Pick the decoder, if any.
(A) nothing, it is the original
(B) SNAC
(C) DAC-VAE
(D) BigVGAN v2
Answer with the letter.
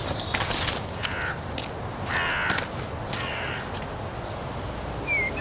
A